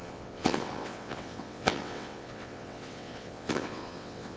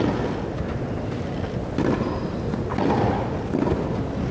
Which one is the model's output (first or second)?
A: first